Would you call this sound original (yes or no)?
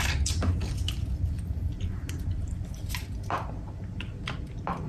yes